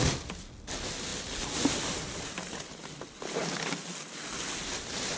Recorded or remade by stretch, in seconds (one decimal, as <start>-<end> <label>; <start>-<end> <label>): 0.0-5.2 recorded